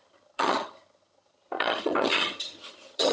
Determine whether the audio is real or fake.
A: fake